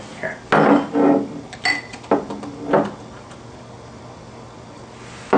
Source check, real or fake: real